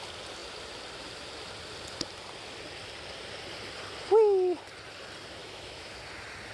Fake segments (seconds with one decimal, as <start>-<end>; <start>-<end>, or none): 5.4-6.0